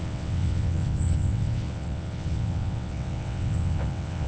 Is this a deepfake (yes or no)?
yes